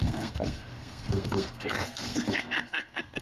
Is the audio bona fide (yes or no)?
no